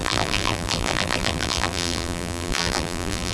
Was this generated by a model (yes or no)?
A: yes